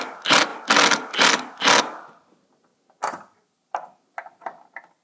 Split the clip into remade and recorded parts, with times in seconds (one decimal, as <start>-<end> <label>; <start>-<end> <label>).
0.0-5.0 recorded